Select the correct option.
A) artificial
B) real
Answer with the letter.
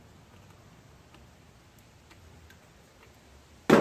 B